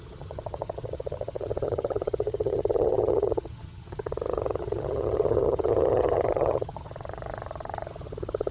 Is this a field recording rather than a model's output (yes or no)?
no